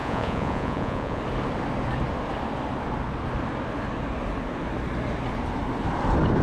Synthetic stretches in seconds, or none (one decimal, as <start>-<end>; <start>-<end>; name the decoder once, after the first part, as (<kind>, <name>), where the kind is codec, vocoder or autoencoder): 0.0-1.2 (vocoder, Vocos)